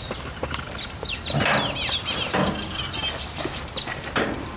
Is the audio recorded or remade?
recorded